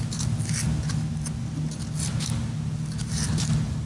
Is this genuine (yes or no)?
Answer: yes